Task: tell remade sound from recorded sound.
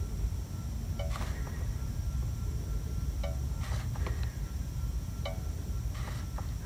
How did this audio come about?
recorded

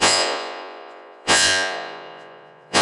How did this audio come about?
remade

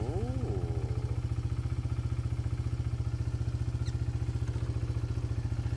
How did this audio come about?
recorded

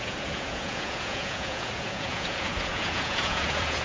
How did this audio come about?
remade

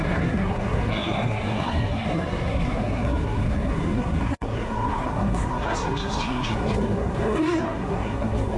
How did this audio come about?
remade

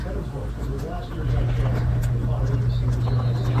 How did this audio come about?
recorded